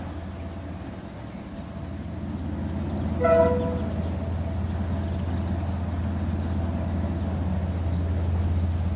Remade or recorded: recorded